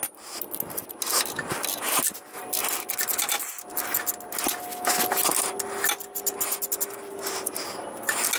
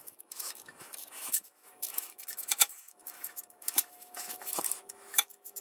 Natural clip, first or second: first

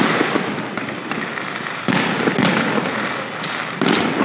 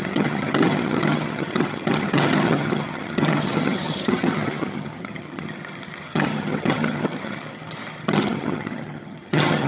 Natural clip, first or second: first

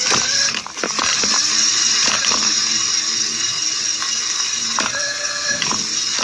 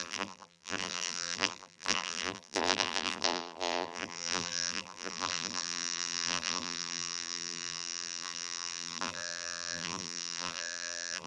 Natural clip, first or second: first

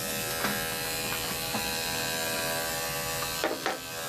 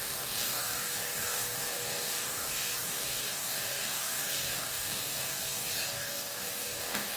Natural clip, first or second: first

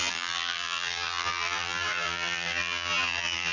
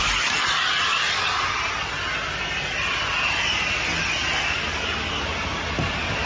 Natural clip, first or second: second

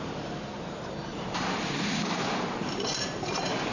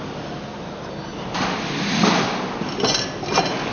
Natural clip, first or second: second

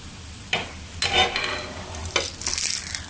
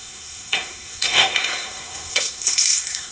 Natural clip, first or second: first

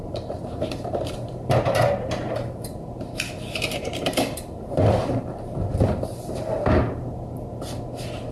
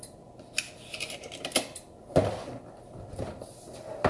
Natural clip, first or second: second